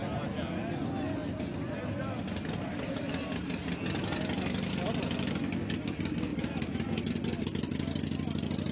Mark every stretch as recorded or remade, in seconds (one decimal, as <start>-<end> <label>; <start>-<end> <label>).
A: 0.0-8.7 recorded